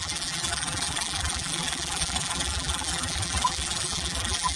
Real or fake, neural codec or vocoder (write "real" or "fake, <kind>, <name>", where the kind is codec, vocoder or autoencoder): fake, vocoder, BigVGAN v2